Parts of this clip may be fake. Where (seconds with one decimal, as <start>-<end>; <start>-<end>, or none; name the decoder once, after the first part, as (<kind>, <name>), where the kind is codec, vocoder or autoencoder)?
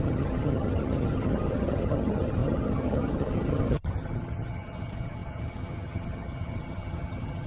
0.0-7.5 (vocoder, HiFi-GAN)